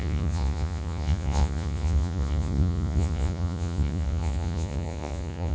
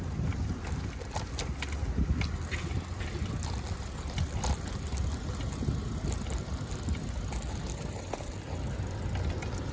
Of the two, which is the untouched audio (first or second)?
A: second